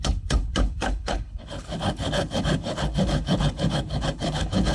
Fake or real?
fake